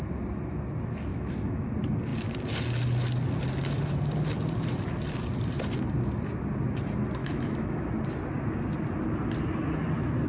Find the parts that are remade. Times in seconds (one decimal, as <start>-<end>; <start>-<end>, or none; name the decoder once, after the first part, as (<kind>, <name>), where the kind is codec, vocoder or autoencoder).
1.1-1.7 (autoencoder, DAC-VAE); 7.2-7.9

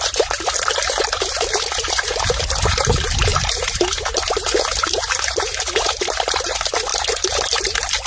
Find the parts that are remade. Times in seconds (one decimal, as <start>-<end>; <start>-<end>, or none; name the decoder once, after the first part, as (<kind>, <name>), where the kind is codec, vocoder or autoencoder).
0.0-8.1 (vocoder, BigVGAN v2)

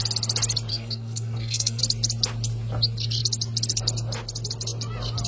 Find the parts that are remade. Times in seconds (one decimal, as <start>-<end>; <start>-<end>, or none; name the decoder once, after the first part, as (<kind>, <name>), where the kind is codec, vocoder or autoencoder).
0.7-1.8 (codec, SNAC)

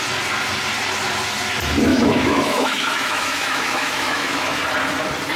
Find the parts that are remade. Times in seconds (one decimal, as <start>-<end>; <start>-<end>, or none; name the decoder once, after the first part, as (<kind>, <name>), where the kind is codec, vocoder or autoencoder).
1.9-4.6 (autoencoder, DAC-VAE)

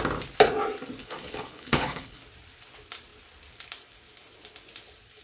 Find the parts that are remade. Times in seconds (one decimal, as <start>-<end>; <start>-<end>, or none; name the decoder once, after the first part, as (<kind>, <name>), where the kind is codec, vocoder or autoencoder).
1.0-2.2 (codec, HILCodec)